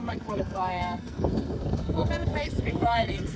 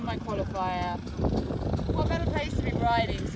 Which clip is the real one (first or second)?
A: second